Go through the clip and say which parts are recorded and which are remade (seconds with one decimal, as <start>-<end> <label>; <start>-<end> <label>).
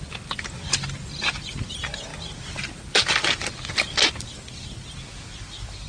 0.0-5.9 recorded